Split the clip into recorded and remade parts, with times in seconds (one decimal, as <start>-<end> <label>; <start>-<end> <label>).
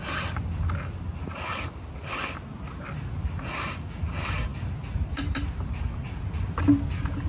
0.0-4.5 recorded; 4.5-6.6 remade; 6.6-7.3 recorded